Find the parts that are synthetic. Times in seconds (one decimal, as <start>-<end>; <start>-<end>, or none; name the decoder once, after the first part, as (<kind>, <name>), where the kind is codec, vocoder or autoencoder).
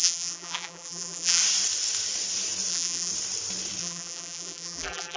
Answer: 0.0-1.4 (vocoder, BigVGAN v2); 2.7-3.1; 3.8-5.2